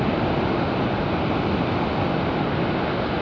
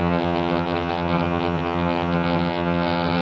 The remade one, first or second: second